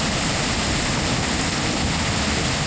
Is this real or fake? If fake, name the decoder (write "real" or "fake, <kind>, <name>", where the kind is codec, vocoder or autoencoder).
real